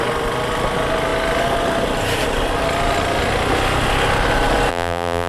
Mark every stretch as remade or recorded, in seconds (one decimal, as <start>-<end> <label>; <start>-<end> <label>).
0.0-4.7 recorded; 4.7-5.3 remade